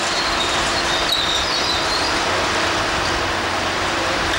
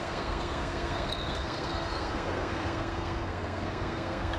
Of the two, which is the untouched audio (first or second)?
first